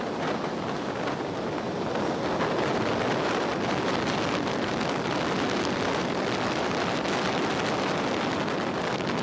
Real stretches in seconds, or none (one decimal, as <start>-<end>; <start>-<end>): 0.0-9.2